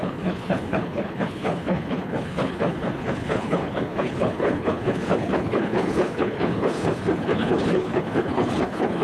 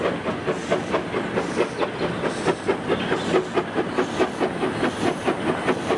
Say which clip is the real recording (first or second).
second